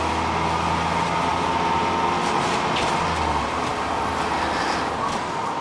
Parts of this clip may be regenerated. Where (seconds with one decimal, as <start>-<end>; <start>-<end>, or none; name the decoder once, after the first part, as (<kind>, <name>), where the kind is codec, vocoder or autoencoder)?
none